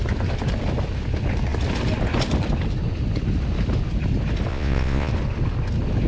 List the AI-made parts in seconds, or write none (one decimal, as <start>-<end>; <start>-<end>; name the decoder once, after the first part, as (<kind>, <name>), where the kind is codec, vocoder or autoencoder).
4.5-5.1 (vocoder, Vocos)